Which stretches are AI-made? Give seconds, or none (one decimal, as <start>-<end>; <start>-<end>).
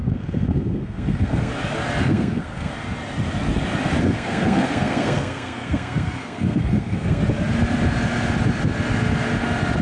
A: 0.0-1.5; 2.0-2.7; 4.0-7.2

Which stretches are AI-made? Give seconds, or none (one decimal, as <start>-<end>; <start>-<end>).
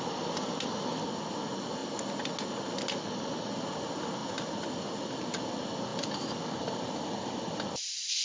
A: none